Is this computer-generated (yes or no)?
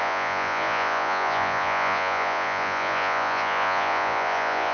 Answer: yes